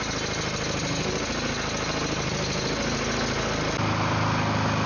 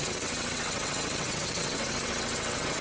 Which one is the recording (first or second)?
first